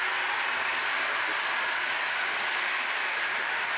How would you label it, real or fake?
real